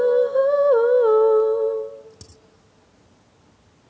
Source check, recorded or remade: recorded